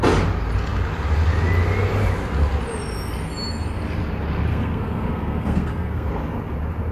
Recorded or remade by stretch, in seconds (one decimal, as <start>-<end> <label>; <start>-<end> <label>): 0.0-4.5 recorded; 4.5-6.1 remade; 6.1-6.9 recorded